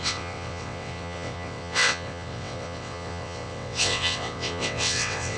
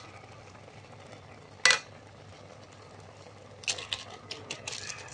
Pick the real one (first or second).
second